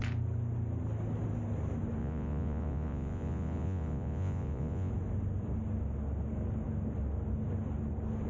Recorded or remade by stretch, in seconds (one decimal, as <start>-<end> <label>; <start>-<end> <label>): 0.0-2.0 recorded; 2.0-4.9 remade; 4.9-8.3 recorded